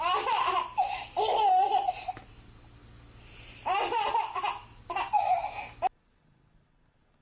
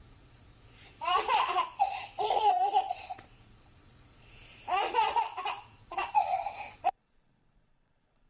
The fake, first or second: second